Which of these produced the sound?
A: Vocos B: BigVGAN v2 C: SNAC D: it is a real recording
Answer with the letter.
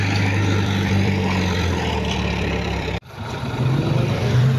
B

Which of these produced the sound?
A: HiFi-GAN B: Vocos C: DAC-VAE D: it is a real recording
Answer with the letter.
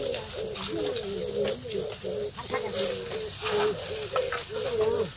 D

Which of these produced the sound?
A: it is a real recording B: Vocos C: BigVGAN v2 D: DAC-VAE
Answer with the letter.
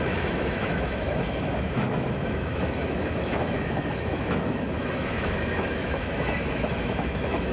D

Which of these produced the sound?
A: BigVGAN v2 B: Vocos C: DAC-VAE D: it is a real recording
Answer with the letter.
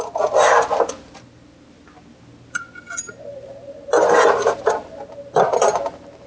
D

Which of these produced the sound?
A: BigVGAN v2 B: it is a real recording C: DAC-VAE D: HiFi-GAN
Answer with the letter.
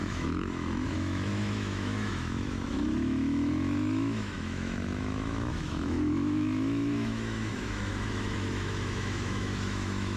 C